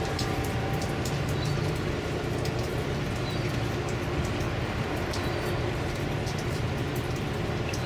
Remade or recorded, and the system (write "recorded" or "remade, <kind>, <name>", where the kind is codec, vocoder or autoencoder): remade, vocoder, BigVGAN v2